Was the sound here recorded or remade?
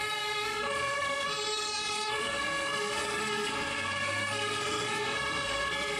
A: remade